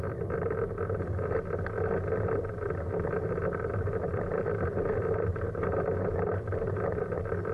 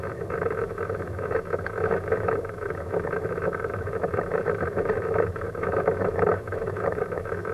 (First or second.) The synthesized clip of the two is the second